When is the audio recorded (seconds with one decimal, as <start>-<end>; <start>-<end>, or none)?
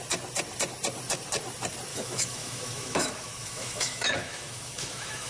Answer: 0.0-1.9